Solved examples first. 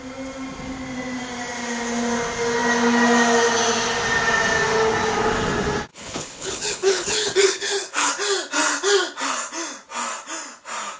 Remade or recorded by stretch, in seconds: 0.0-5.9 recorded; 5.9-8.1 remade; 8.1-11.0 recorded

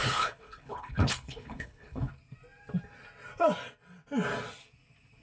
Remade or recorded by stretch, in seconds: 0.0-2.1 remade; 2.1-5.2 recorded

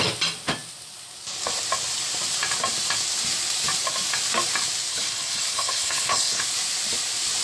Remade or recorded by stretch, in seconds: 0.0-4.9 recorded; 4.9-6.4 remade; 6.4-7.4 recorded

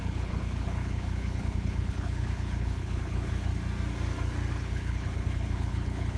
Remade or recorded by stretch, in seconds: 0.0-3.5 remade; 3.5-4.5 recorded; 4.5-6.2 remade

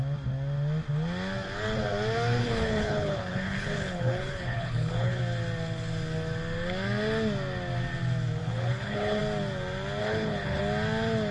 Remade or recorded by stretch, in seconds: 0.0-2.4 recorded; 2.4-5.2 remade; 5.2-8.4 recorded; 8.4-9.2 remade; 9.2-10.0 recorded; 10.0-10.6 remade; 10.6-11.3 recorded

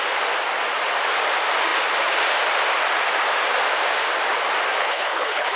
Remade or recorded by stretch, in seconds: 0.0-4.8 recorded; 4.8-5.6 remade

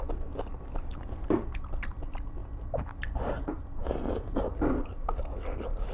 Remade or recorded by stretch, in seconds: 0.0-5.9 recorded

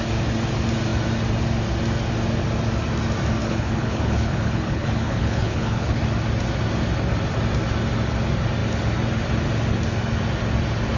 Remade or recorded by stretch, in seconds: 0.0-3.4 recorded; 3.4-6.0 remade; 6.0-11.0 recorded